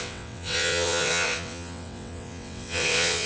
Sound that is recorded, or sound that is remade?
remade